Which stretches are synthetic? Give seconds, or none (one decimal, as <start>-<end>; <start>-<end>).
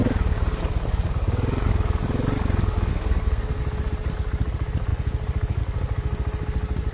2.9-3.6